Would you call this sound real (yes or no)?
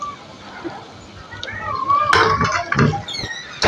yes